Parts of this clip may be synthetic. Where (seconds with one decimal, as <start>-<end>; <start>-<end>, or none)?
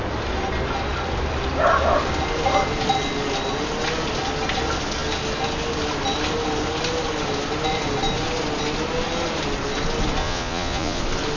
10.2-11.0